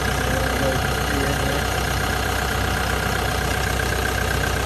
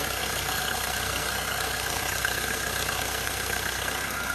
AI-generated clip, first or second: second